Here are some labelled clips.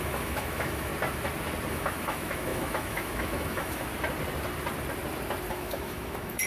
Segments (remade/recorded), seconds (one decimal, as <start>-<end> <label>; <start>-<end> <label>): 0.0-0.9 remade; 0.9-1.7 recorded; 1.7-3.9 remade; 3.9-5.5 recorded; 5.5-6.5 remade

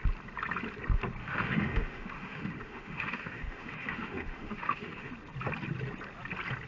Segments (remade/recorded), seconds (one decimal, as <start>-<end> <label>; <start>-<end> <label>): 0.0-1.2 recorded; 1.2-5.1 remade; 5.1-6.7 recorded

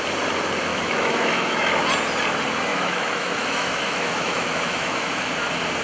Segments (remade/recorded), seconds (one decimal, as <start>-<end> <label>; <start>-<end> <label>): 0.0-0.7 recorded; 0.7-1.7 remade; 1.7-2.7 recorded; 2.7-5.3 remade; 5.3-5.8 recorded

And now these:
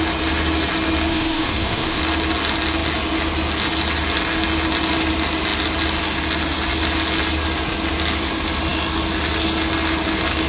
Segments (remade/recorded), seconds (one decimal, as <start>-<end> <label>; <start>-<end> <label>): 0.0-1.1 recorded; 1.1-2.0 remade; 2.0-10.5 recorded

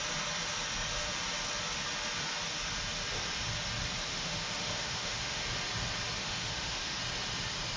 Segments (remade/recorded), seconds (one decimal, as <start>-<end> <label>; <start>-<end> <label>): 0.0-4.1 recorded; 4.1-5.4 remade; 5.4-6.2 recorded; 6.2-7.0 remade; 7.0-7.8 recorded

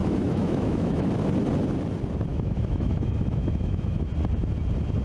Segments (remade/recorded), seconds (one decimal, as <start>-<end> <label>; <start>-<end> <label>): 0.0-1.1 remade; 1.1-2.3 recorded; 2.3-4.1 remade; 4.1-5.0 recorded

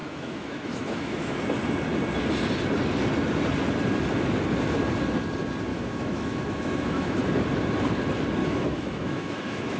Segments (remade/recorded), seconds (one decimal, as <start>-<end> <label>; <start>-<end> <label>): 0.0-1.4 remade; 1.4-5.7 recorded; 5.7-7.2 remade; 7.2-8.4 recorded; 8.4-9.8 remade